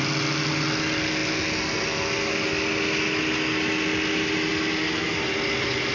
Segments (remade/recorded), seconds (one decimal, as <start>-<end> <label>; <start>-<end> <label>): 0.0-5.9 recorded